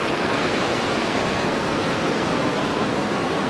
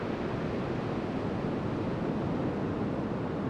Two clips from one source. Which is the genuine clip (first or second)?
second